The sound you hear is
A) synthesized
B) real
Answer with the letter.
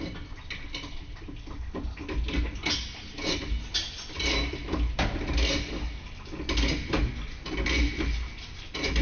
B